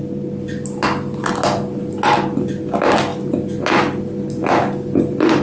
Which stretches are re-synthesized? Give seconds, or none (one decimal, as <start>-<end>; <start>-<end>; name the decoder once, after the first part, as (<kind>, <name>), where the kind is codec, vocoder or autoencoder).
none